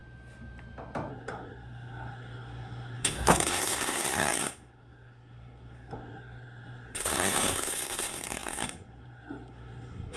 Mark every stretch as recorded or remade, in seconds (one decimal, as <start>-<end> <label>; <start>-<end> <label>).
0.0-1.1 recorded; 1.1-10.2 remade